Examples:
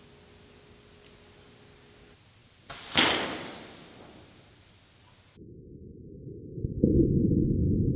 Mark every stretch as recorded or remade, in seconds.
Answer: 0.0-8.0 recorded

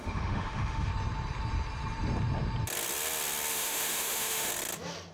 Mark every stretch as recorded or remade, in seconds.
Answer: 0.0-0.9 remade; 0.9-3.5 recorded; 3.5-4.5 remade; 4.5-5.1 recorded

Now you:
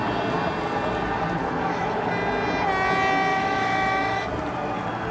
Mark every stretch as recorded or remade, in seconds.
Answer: 0.0-1.4 recorded; 1.4-2.1 remade; 2.1-3.3 recorded; 3.3-4.3 remade; 4.3-5.1 recorded

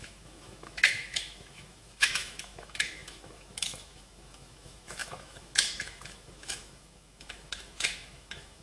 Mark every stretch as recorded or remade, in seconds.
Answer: 0.0-8.6 remade